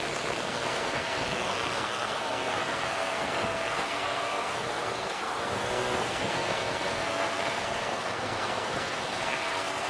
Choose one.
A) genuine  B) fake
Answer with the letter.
B